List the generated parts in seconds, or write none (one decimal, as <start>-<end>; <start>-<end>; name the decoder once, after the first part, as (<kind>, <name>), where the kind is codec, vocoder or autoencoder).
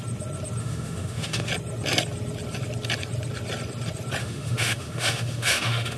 0.6-1.5 (autoencoder, DAC-VAE); 4.2-6.0